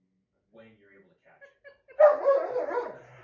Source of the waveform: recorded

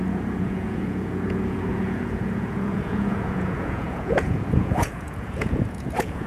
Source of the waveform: remade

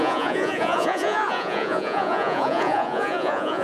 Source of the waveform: remade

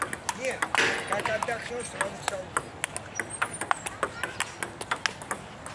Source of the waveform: recorded